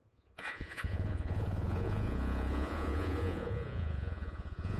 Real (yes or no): no